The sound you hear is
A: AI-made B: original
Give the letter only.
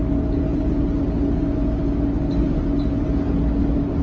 B